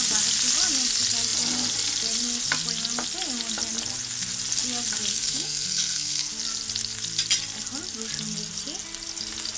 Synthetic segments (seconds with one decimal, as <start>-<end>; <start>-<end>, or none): 5.1-6.3